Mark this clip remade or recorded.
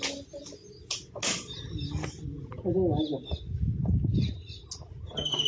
recorded